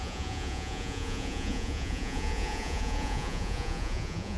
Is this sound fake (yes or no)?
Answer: yes